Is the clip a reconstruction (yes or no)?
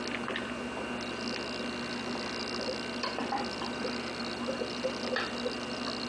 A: no